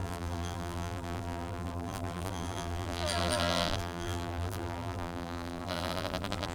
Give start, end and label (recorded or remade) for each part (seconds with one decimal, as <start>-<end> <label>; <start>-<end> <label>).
0.0-6.5 remade